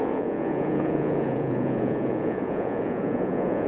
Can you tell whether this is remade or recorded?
remade